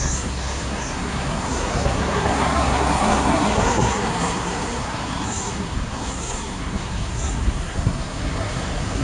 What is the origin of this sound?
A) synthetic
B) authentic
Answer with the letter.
A